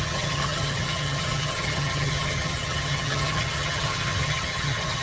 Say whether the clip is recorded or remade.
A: remade